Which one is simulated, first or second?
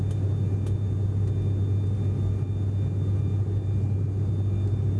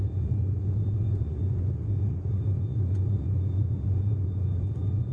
second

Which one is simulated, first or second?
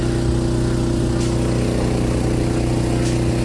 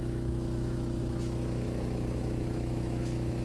second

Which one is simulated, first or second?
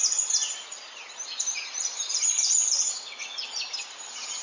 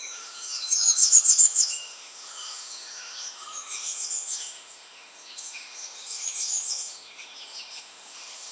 second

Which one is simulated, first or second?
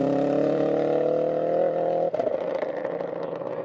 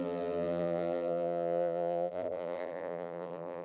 second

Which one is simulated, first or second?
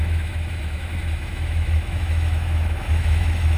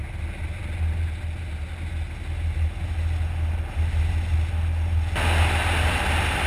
first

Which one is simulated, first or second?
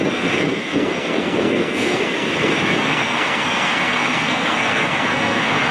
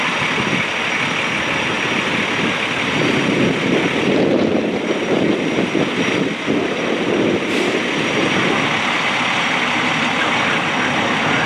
first